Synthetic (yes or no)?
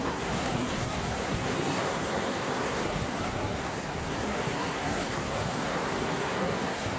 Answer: yes